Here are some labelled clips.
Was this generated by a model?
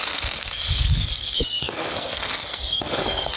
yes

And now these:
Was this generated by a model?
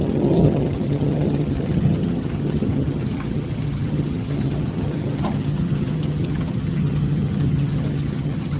yes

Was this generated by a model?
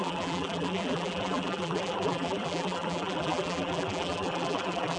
yes